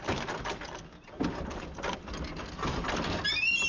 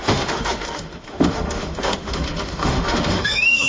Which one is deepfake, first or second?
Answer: second